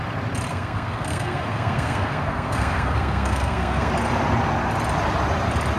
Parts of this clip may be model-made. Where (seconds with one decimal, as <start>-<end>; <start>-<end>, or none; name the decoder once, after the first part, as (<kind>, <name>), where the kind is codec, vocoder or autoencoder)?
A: 0.5-3.9 (codec, SNAC)